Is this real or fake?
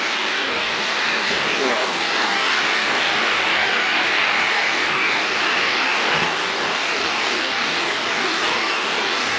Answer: fake